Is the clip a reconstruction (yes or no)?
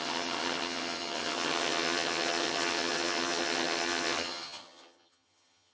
yes